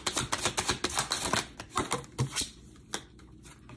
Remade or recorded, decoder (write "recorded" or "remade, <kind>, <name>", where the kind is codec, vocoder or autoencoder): recorded